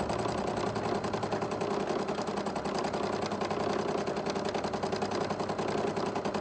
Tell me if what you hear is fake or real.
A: real